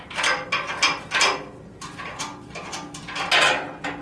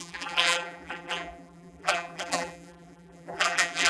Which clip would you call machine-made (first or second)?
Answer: second